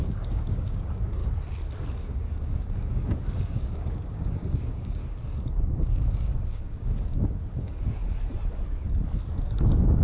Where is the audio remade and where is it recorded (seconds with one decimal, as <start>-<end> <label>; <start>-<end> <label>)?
0.0-1.2 remade; 1.2-1.8 recorded; 1.8-5.0 remade; 5.0-5.7 recorded; 5.7-8.0 remade; 8.0-9.4 recorded; 9.4-10.0 remade

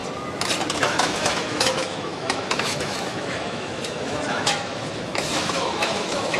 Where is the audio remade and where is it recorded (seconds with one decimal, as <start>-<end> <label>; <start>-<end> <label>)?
0.0-0.8 recorded; 0.8-6.4 remade

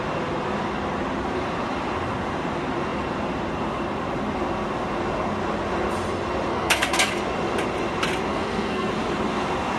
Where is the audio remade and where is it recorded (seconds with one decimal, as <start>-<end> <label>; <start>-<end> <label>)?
0.0-6.5 recorded; 6.5-7.1 remade; 7.1-8.3 recorded; 8.3-8.9 remade; 8.9-9.8 recorded

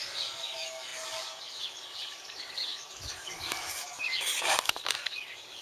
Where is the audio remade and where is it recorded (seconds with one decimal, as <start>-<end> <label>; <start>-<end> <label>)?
0.0-5.6 remade